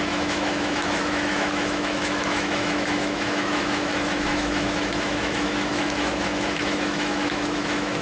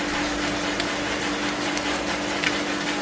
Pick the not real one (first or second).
first